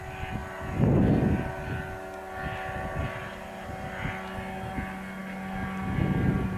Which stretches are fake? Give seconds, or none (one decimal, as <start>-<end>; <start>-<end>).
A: 3.2-3.7